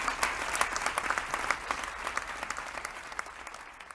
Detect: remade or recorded recorded